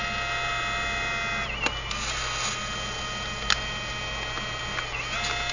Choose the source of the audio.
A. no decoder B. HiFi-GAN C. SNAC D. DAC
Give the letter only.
A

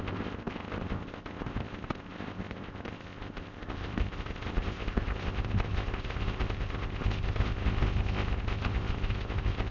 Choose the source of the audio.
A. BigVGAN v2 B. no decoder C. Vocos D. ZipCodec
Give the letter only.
D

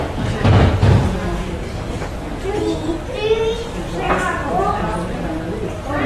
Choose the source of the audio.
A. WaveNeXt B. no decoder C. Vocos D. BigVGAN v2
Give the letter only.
B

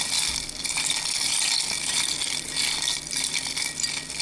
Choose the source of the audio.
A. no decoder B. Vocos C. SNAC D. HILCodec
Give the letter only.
A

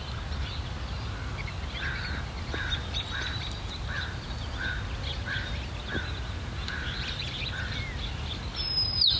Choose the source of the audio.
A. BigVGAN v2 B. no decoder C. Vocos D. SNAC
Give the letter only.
B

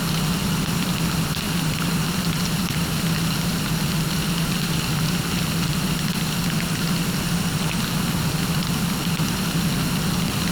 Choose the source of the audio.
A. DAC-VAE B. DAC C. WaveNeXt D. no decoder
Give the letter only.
D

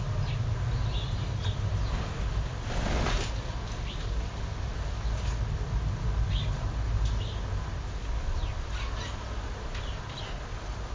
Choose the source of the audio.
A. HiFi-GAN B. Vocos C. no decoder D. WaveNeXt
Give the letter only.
C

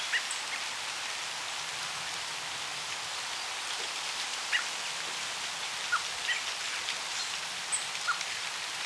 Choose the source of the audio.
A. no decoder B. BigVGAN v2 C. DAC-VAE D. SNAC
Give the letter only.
A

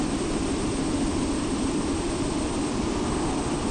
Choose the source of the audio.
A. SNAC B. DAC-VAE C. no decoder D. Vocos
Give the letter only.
C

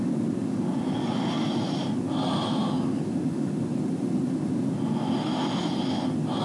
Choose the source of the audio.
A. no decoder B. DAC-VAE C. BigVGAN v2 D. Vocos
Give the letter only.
A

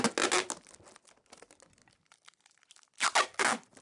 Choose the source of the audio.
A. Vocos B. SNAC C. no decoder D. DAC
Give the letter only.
C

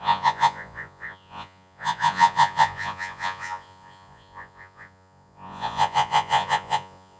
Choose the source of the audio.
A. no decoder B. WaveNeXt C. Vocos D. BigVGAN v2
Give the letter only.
C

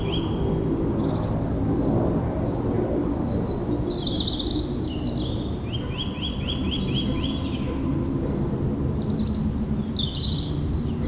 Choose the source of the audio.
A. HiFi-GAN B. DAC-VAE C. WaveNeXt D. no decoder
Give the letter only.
D